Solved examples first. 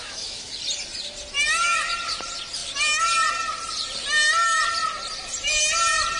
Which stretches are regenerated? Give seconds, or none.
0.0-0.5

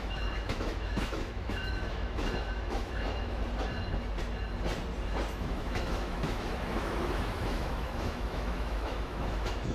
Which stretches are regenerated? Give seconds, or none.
0.0-3.4; 5.3-9.7